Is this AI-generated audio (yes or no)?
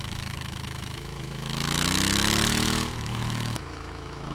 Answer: yes